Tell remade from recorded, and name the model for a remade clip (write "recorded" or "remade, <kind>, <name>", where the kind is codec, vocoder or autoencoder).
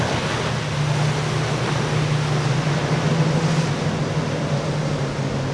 recorded